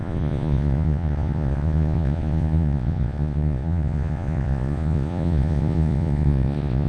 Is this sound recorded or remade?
remade